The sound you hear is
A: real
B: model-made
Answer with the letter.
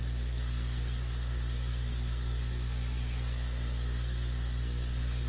B